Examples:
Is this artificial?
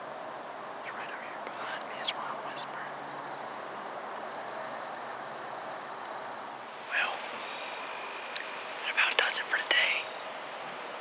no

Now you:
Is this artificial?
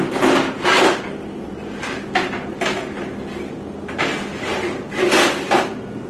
no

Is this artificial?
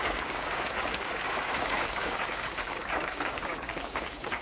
yes